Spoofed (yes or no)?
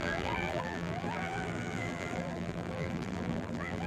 yes